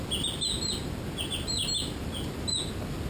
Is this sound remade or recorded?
recorded